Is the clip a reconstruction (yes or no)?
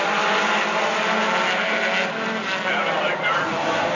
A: no